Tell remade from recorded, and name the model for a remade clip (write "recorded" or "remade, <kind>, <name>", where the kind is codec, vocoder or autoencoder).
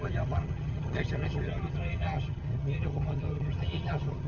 remade, vocoder, HiFi-GAN